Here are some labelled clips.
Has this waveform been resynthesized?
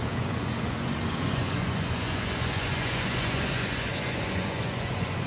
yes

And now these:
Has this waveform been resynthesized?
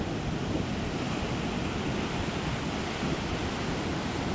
no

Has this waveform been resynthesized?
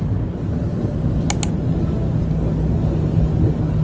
no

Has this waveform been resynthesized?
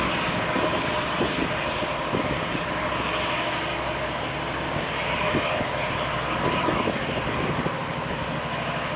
no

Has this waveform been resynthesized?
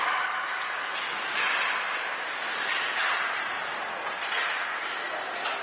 no